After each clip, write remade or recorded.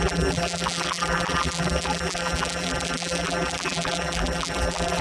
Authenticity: remade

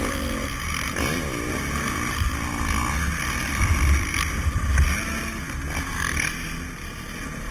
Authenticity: recorded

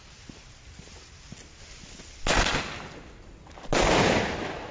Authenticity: recorded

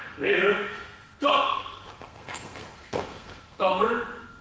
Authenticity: remade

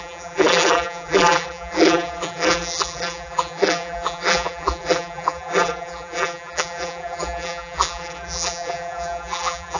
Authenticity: remade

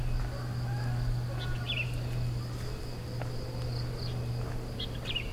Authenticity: recorded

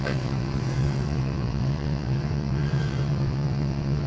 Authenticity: remade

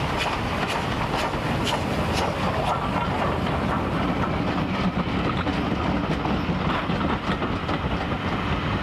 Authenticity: recorded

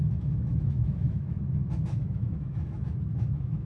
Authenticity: remade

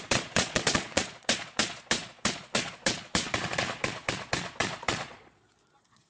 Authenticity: remade